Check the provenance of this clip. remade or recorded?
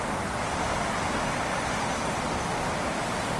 recorded